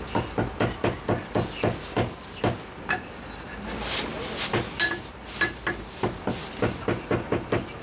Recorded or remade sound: recorded